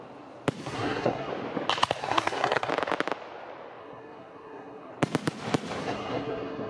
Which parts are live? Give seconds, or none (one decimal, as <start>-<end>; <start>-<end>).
0.0-0.6; 1.3-2.0; 2.7-3.8; 4.9-5.8